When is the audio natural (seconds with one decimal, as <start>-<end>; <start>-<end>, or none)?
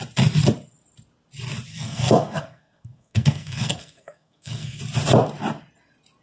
0.0-1.7; 4.8-6.2